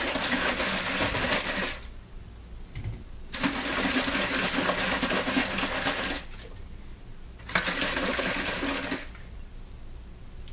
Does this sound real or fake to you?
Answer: real